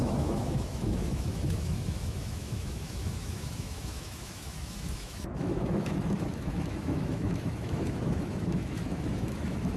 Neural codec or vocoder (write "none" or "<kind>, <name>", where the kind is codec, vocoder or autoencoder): autoencoder, DAC-VAE